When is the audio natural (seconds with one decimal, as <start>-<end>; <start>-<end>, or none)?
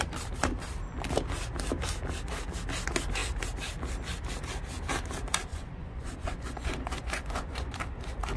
0.0-5.5; 7.8-8.4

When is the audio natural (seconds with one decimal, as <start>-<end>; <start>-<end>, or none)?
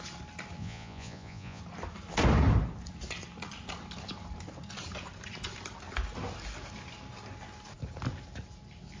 0.0-0.6; 1.6-9.0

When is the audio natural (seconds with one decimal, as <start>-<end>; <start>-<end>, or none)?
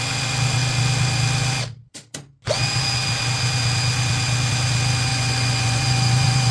0.0-5.1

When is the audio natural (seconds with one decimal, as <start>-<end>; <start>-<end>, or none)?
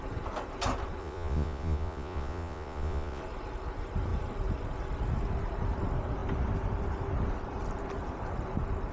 0.0-1.0; 3.2-8.9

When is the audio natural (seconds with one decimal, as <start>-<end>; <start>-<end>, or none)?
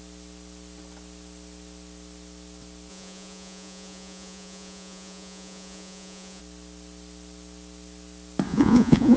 0.0-2.9; 6.4-8.5